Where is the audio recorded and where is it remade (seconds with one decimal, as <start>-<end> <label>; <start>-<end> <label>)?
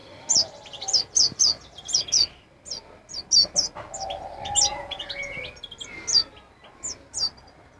0.0-4.7 recorded; 4.7-5.4 remade; 5.4-7.8 recorded